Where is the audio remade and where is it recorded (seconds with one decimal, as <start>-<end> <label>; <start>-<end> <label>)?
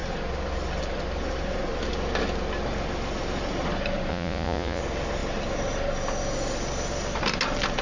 0.0-4.1 recorded; 4.1-4.8 remade; 4.8-7.8 recorded